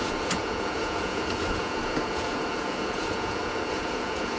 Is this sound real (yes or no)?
no